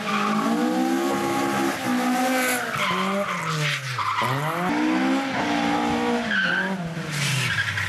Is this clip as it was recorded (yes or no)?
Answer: yes